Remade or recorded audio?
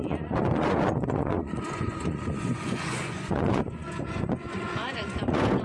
remade